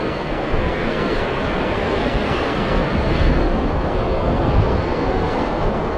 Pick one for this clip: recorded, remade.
remade